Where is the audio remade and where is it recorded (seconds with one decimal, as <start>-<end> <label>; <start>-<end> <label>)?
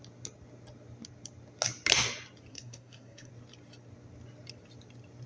0.0-2.5 recorded; 2.5-3.3 remade; 3.3-5.3 recorded